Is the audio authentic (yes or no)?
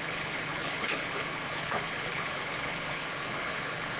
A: no